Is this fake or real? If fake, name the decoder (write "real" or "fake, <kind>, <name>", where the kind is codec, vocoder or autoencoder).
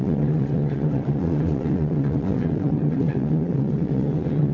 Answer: fake, vocoder, WaveNeXt